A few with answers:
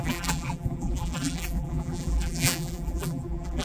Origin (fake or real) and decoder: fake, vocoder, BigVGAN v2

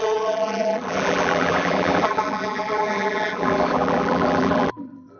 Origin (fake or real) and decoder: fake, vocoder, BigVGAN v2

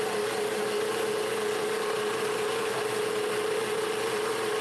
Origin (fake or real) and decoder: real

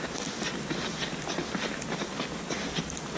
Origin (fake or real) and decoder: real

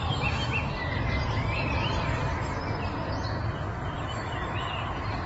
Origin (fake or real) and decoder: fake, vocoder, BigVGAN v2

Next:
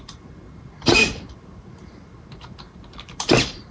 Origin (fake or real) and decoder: fake, vocoder, BigVGAN v2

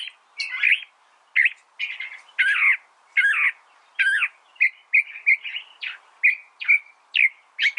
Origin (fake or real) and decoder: real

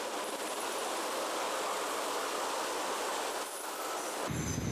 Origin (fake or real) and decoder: fake, vocoder, BigVGAN v2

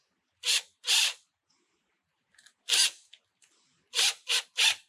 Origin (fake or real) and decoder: real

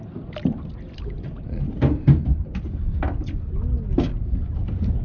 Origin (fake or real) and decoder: real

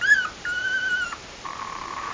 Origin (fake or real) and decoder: fake, vocoder, BigVGAN v2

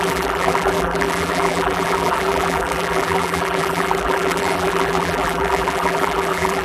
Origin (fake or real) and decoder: fake, vocoder, BigVGAN v2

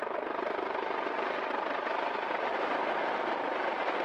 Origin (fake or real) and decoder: fake, vocoder, BigVGAN v2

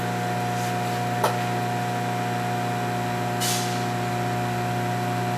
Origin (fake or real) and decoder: real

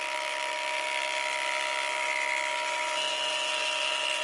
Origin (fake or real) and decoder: real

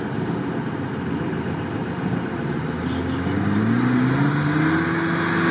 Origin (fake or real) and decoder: real